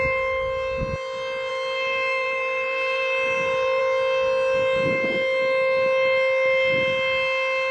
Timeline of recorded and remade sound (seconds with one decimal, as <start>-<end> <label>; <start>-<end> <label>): 0.0-1.5 recorded; 1.5-3.8 remade; 3.8-7.7 recorded

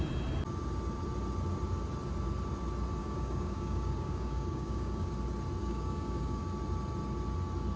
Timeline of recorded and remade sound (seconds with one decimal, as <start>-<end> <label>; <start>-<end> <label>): 0.0-3.0 recorded; 3.0-5.1 remade; 5.1-5.6 recorded; 5.6-6.4 remade; 6.4-7.8 recorded